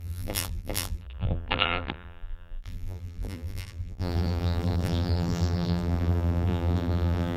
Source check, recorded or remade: remade